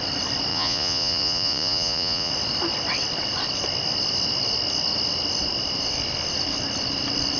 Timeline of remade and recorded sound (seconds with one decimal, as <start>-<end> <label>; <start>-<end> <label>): 0.0-0.5 recorded; 0.5-2.3 remade; 2.3-7.4 recorded